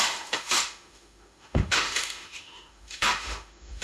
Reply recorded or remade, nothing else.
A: remade